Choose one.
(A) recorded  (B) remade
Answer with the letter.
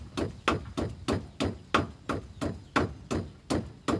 A